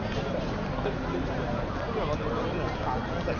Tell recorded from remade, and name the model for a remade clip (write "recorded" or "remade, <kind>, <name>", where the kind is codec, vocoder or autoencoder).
recorded